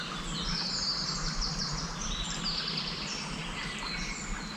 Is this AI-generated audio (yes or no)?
no